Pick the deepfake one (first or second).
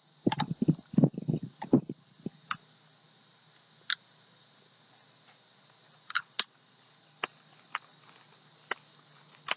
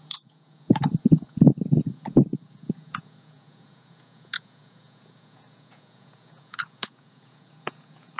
second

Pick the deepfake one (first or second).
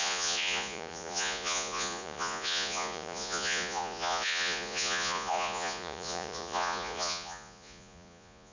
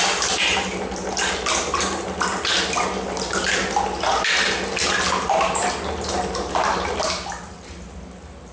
first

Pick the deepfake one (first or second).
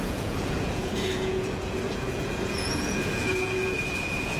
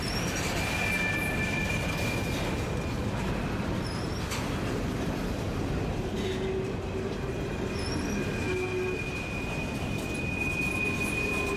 first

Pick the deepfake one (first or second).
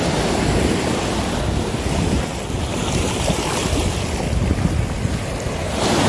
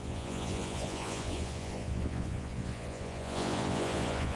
second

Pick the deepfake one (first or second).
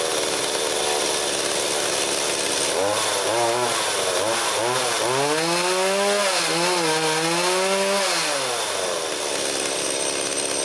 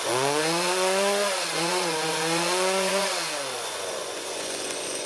second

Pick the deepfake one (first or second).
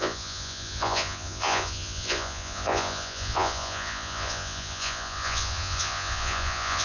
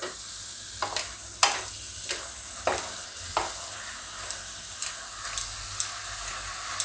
first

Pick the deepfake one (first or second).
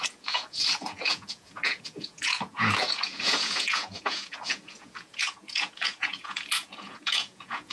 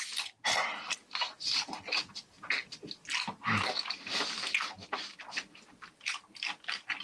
first